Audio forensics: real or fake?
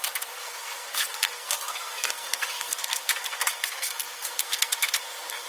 fake